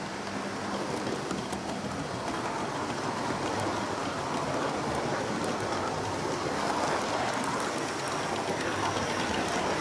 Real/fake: real